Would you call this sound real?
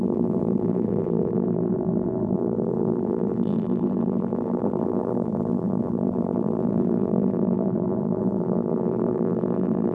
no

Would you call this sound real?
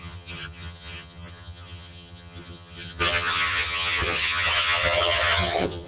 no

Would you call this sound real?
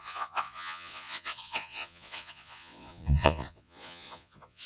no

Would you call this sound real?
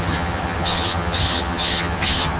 no